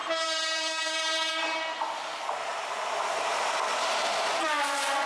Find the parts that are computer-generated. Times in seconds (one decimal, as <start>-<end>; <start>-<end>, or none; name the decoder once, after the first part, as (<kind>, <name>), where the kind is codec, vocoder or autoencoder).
0.0-1.3 (vocoder, BigVGAN v2); 2.5-3.4